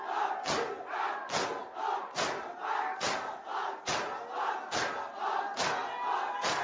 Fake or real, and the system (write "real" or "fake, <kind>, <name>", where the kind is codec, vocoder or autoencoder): real